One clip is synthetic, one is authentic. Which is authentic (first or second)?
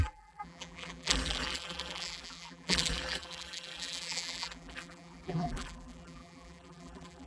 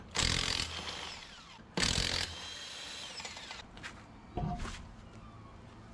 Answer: second